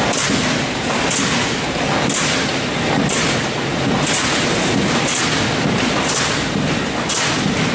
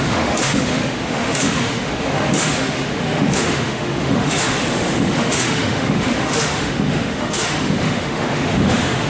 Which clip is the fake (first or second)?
second